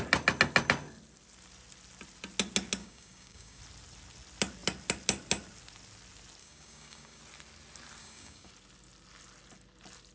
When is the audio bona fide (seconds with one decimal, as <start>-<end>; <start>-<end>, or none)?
0.0-2.8; 3.6-6.4; 7.2-8.0; 8.5-10.1